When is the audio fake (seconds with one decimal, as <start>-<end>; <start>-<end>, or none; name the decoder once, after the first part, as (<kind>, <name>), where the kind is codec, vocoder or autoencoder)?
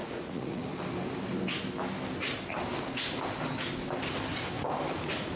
0.0-0.7 (vocoder, Vocos)